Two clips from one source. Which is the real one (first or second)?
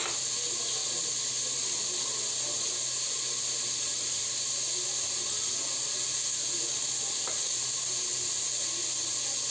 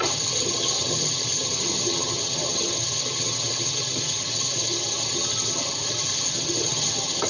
first